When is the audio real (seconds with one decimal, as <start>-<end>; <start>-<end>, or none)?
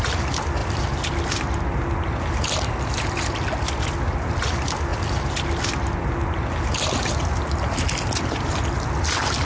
0.0-9.4